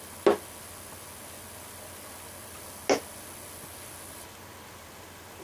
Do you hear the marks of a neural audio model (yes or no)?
no